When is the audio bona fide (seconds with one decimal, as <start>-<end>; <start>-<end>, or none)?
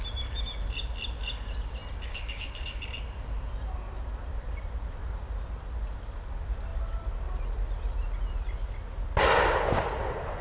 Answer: 0.0-2.1; 2.8-10.4